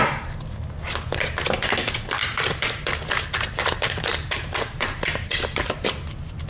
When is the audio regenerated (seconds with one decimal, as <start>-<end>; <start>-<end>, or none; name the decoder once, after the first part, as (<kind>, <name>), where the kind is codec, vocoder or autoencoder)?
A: 2.2-6.1 (vocoder, BigVGAN v2)